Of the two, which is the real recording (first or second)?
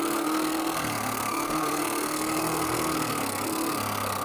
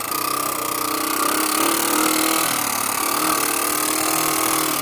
second